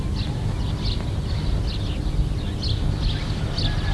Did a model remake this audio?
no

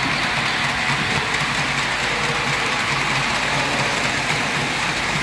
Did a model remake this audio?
no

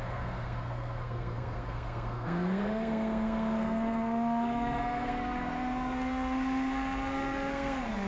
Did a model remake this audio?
yes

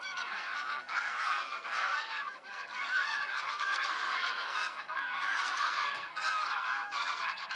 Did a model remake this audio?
yes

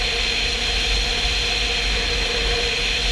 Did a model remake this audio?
no